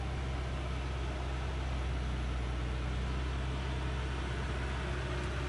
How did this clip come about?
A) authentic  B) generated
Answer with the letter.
A